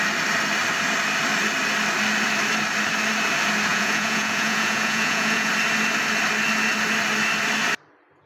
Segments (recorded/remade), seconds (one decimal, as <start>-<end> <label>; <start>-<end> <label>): 0.0-3.7 recorded; 3.7-5.5 remade; 5.5-8.3 recorded